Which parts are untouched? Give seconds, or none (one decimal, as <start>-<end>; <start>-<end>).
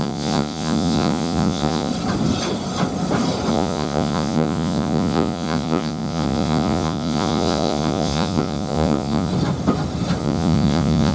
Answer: 1.9-3.5; 9.3-10.2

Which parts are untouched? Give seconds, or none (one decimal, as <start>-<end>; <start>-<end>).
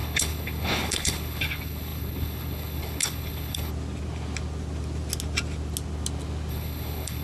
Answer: 3.7-6.5